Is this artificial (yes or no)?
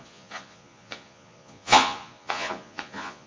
yes